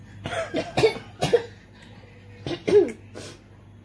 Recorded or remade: recorded